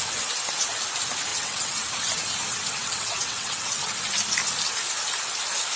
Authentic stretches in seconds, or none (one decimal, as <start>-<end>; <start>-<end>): 0.0-1.3; 1.9-2.8; 3.9-5.8